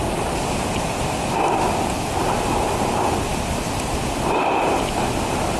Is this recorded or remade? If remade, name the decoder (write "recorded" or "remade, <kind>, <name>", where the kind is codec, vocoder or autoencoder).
recorded